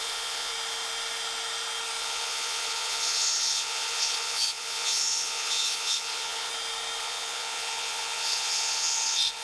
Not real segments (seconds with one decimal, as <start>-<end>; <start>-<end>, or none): 0.0-0.5; 2.0-6.5; 7.0-9.4